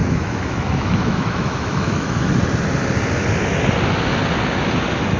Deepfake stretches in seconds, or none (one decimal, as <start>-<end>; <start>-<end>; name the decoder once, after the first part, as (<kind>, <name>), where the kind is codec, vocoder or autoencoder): 0.0-2.4 (autoencoder, DAC-VAE)